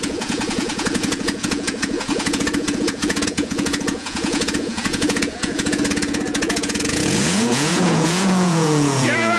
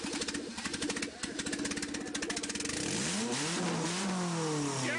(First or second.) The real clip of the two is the second